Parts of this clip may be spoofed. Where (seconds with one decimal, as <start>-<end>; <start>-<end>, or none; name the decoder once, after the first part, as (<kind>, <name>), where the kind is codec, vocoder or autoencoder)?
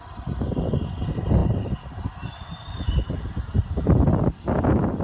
none